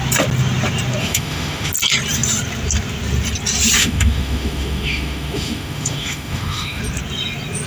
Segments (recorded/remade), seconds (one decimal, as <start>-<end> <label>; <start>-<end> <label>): 0.0-1.0 recorded; 1.0-1.7 remade; 1.7-3.8 recorded; 3.8-6.8 remade; 6.8-7.7 recorded